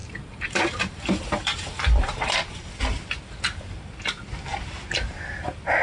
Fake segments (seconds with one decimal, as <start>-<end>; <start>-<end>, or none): 0.0-2.7